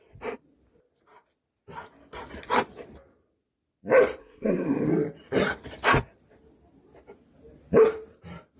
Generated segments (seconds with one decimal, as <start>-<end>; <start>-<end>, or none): 4.2-4.9